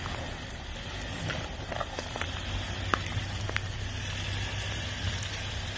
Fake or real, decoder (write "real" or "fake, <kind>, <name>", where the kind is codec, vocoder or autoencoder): real